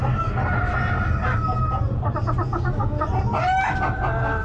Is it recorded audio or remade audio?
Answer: recorded